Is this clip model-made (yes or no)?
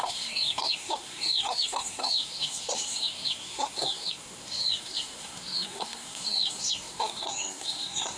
yes